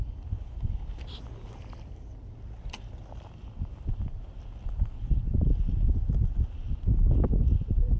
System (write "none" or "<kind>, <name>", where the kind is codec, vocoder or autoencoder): none